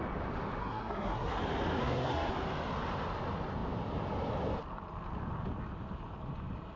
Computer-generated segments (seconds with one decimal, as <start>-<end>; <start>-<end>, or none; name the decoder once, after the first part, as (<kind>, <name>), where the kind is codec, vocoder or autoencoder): 0.6-1.4 (codec, SNAC); 1.8-2.3